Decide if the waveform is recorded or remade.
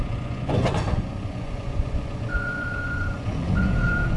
remade